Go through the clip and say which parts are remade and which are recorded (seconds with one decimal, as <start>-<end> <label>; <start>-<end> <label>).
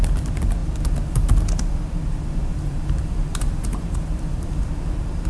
0.0-2.5 recorded; 2.5-4.7 remade; 4.7-5.3 recorded